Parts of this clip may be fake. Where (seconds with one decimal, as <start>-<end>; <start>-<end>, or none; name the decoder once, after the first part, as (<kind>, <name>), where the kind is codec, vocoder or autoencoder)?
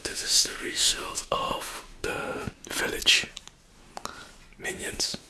0.0-2.5 (autoencoder, DAC-VAE); 4.7-5.3